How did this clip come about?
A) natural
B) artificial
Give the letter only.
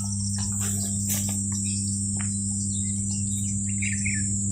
A